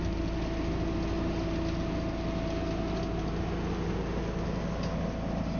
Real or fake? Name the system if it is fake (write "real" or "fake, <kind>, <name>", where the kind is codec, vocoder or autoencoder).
real